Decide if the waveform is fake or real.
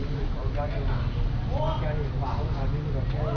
real